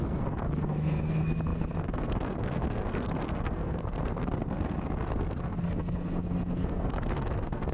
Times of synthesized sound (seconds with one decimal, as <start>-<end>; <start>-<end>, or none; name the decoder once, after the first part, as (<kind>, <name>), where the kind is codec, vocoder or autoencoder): 0.0-7.7 (codec, SNAC)